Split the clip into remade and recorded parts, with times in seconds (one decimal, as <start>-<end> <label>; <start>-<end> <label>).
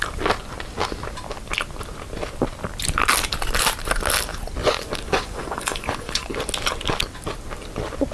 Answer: 0.0-4.6 recorded; 4.6-6.4 remade; 6.4-8.1 recorded